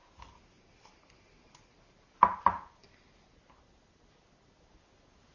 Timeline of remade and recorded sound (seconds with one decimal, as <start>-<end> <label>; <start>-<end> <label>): 0.0-5.3 recorded